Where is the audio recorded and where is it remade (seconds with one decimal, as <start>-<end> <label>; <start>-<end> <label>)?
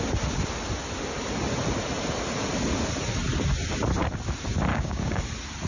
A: 0.0-4.7 recorded; 4.7-5.2 remade; 5.2-5.7 recorded